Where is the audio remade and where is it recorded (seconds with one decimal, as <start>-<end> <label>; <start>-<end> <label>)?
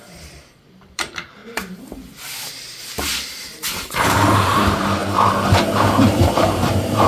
0.0-1.4 remade; 1.4-2.5 recorded; 2.5-3.1 remade; 3.1-4.3 recorded; 4.3-7.1 remade